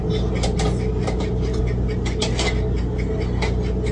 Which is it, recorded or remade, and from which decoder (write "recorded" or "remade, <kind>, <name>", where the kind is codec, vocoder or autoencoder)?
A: recorded